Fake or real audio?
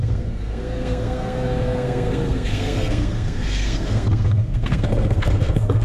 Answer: fake